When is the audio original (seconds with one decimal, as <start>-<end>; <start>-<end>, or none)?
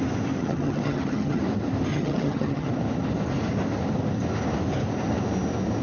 0.0-0.4; 1.4-1.9; 2.7-5.8